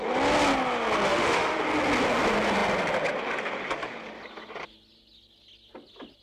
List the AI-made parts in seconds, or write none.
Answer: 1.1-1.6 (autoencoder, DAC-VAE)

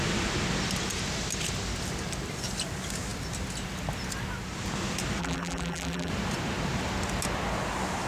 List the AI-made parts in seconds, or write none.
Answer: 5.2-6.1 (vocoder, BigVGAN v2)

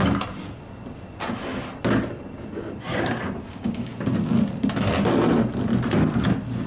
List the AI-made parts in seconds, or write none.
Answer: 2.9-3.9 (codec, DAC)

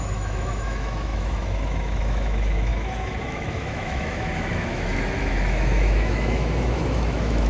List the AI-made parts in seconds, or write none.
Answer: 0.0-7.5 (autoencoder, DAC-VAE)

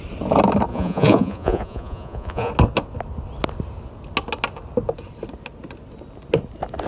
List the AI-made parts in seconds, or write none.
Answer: 0.7-2.5 (vocoder, Vocos)

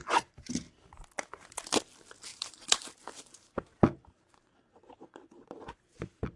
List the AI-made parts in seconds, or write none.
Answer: 0.0-0.5 (vocoder, BigVGAN v2); 2.3-6.4

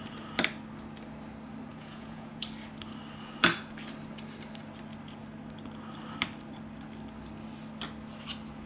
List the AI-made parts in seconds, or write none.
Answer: 1.7-2.4 (vocoder, Vocos)